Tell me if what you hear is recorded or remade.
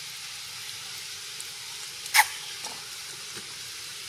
recorded